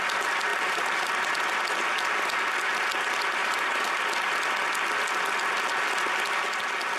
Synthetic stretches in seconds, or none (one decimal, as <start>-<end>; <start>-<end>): 0.5-1.1; 3.4-3.9